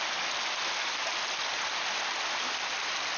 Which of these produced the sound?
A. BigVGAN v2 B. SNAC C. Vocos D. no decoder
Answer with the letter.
D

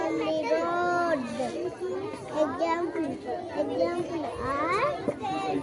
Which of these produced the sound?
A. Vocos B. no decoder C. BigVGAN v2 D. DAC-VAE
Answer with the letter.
B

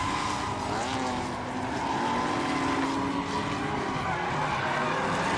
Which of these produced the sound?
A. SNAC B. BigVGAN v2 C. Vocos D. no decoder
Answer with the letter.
D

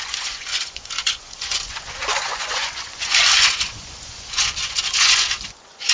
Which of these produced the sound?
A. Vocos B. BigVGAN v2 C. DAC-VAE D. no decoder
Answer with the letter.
A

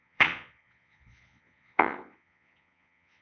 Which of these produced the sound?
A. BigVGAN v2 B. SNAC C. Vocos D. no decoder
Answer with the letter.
C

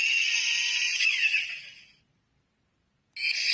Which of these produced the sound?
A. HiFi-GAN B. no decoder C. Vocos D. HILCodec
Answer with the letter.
B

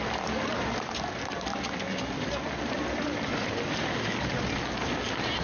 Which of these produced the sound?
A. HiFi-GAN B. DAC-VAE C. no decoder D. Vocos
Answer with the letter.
C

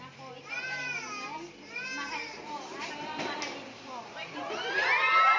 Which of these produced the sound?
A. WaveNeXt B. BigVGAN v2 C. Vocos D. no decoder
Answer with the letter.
D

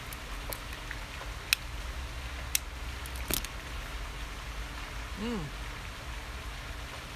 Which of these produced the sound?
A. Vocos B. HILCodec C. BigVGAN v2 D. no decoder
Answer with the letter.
D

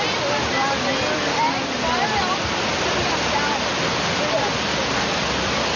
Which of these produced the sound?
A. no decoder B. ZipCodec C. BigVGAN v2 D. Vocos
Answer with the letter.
A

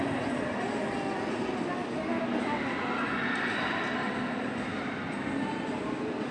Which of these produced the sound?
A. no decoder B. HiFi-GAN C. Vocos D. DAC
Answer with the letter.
A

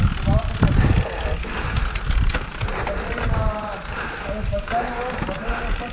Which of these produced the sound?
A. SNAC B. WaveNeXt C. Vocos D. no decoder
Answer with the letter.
D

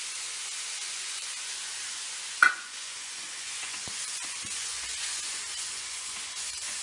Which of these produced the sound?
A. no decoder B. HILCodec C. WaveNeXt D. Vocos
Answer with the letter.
D